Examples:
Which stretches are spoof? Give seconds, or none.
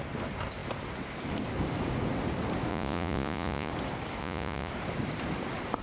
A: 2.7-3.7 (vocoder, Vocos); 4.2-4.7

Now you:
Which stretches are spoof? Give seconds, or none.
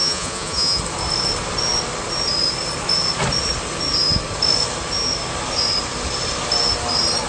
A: 0.0-0.8 (vocoder, Vocos)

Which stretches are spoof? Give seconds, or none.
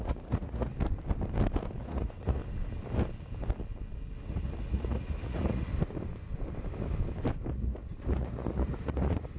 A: 0.0-0.7 (vocoder, Vocos); 1.8-2.4; 4.3-5.7; 7.5-9.4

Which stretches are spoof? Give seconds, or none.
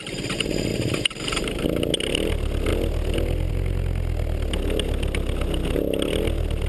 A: 0.7-1.8 (vocoder, BigVGAN v2)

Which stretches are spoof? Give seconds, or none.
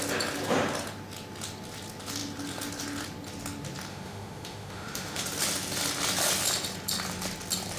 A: 3.9-5.2 (autoencoder, DAC-VAE)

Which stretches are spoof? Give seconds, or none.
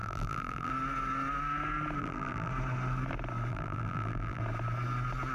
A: 0.0-0.7 (vocoder, BigVGAN v2); 2.0-2.5; 3.5-4.4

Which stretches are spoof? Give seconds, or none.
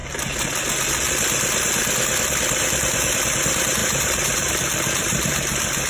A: 3.8-4.5 (vocoder, BigVGAN v2); 5.0-5.9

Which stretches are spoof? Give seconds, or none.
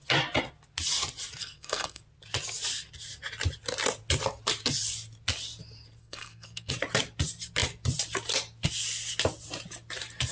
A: 1.4-2.0 (codec, SNAC); 6.0-6.7